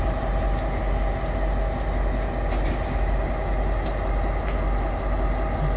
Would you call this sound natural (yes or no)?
yes